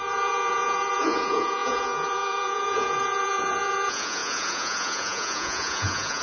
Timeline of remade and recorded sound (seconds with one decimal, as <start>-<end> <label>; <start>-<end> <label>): 0.0-6.2 remade